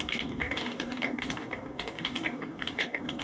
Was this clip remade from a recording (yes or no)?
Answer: yes